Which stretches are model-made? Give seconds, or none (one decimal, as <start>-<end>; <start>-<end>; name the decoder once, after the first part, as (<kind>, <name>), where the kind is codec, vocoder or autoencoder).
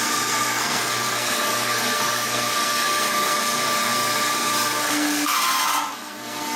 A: 0.0-6.6 (codec, SNAC)